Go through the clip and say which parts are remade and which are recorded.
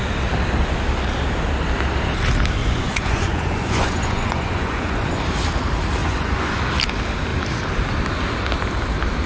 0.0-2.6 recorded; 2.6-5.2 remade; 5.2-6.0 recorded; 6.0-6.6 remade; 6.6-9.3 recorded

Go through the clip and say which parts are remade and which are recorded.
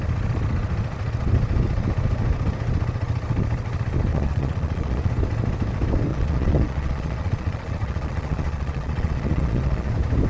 0.0-4.1 recorded; 4.1-5.1 remade; 5.1-6.1 recorded; 6.1-9.9 remade; 9.9-10.3 recorded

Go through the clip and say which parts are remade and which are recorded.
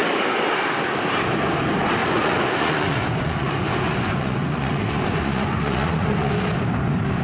0.0-2.0 recorded; 2.0-6.3 remade; 6.3-7.2 recorded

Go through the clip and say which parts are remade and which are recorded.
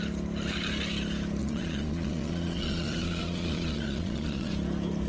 0.0-1.4 recorded; 1.4-4.5 remade; 4.5-5.1 recorded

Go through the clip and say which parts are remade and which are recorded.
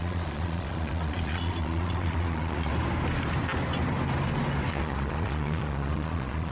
0.0-2.7 remade; 2.7-4.7 recorded; 4.7-6.5 remade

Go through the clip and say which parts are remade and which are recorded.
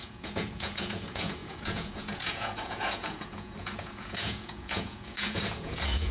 0.0-6.1 remade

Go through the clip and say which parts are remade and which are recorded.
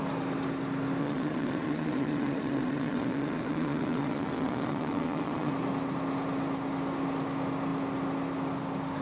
0.0-1.0 recorded; 1.0-5.5 remade; 5.5-9.0 recorded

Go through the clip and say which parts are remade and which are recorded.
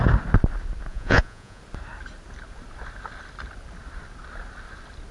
0.0-0.9 recorded; 0.9-1.6 remade; 1.6-5.1 recorded